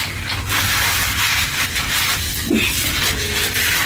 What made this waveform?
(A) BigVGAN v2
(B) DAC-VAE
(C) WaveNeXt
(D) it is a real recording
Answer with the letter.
D